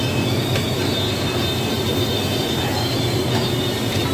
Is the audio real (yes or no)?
yes